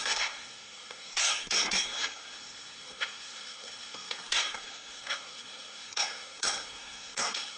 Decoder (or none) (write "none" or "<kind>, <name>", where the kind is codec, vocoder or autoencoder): codec, SNAC